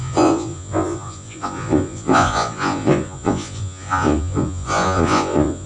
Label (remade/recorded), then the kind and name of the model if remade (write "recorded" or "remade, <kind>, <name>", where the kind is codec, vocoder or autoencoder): remade, vocoder, Vocos